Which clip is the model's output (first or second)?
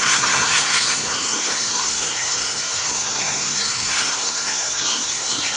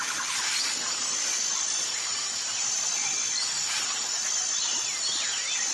first